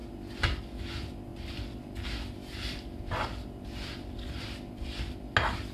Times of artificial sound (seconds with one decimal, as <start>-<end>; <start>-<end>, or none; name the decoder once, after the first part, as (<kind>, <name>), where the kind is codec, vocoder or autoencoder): none